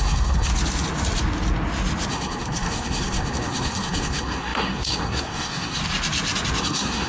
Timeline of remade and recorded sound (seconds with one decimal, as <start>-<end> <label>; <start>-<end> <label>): 0.0-0.5 remade; 0.5-2.1 recorded; 2.1-5.8 remade; 5.8-6.6 recorded; 6.6-7.1 remade